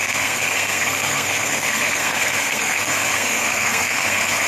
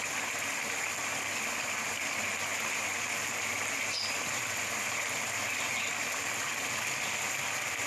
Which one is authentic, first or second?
second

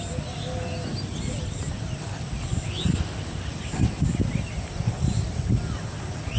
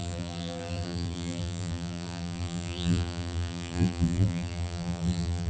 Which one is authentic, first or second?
first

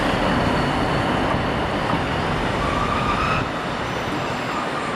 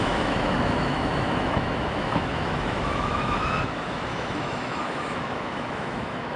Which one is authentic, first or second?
first